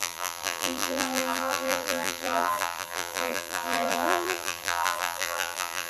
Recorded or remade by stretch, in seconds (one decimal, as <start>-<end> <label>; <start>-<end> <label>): 0.0-5.9 remade